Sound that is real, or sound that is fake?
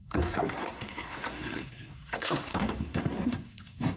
fake